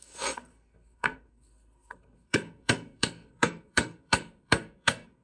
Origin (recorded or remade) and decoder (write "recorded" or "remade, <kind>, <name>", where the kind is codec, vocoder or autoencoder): remade, codec, SNAC